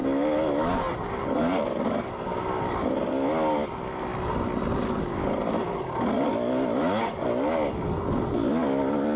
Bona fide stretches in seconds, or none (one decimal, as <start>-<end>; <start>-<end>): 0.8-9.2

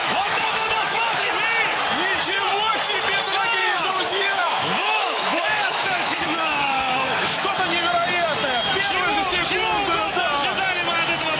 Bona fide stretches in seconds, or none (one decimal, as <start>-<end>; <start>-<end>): 1.3-3.6; 7.5-11.4

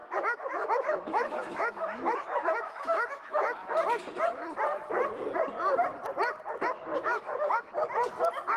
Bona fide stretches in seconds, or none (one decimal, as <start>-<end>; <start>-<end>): 3.7-6.9; 7.7-8.6